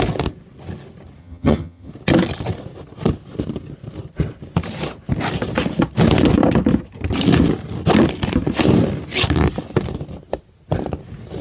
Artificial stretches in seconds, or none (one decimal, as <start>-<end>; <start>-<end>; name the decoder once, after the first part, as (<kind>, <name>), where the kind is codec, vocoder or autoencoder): 1.2-1.9 (vocoder, HiFi-GAN)